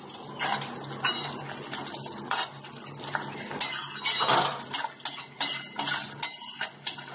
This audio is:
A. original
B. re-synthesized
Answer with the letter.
A